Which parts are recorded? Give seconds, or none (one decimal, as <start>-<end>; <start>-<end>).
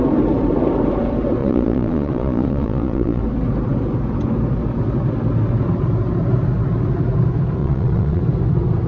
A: 0.0-1.4; 3.2-7.6; 8.2-8.9